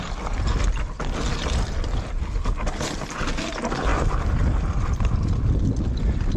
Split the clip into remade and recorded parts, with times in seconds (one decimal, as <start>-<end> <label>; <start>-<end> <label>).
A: 0.0-6.4 recorded